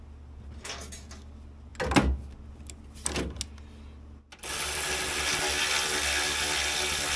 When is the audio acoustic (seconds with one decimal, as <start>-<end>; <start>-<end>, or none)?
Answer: 0.0-7.2